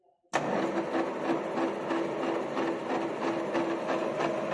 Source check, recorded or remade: recorded